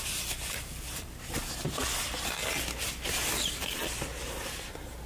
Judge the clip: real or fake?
real